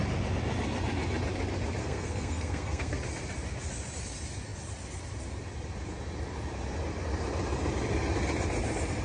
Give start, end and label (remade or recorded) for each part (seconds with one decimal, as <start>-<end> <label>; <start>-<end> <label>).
0.0-1.8 recorded; 1.8-3.0 remade; 3.0-9.0 recorded